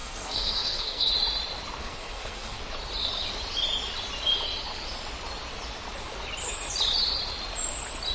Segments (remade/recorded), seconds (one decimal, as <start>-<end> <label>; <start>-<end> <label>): 0.0-1.1 remade; 1.1-1.8 recorded; 1.8-2.6 remade; 2.6-8.1 recorded